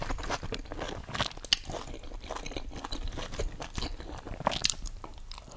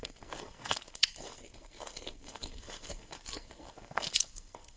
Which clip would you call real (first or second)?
first